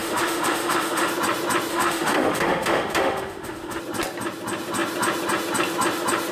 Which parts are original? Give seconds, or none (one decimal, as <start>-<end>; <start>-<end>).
1.1-1.7; 3.8-6.3